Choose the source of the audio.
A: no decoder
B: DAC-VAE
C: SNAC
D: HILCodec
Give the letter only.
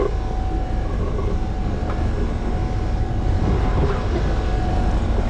A